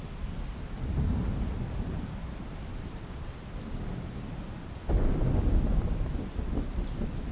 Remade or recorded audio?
recorded